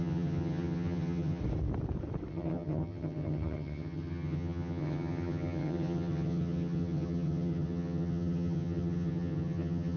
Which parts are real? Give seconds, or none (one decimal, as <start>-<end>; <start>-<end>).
1.4-2.3